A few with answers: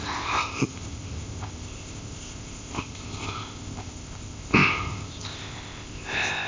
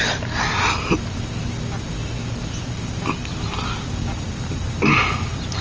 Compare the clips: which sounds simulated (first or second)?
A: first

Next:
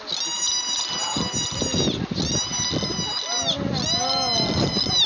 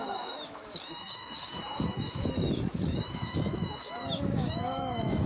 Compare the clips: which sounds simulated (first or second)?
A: second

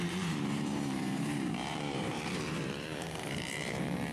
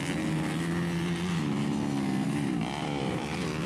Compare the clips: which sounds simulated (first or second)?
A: first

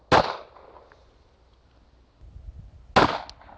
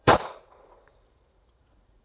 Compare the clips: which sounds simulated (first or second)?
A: second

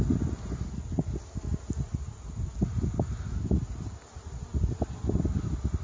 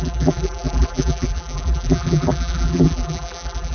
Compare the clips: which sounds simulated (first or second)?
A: second